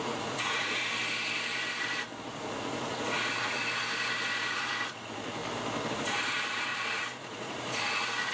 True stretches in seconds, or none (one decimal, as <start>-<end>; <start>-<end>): 0.8-2.2; 3.6-4.4; 5.4-5.9